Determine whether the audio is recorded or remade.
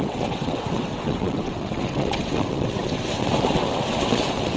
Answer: remade